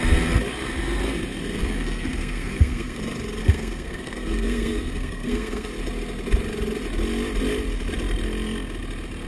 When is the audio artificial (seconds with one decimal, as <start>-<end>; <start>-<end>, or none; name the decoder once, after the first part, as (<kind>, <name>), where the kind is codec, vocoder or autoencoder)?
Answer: 1.6-3.0 (codec, SNAC); 3.4-5.7